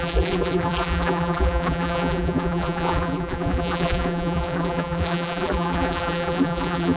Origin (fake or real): fake